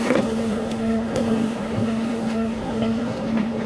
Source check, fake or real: fake